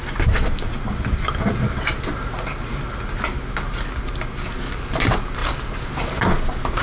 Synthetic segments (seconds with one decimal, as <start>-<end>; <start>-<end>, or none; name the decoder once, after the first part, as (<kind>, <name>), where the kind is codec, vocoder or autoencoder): none